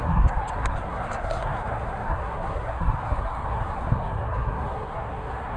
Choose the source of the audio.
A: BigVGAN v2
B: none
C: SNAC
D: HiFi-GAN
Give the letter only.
C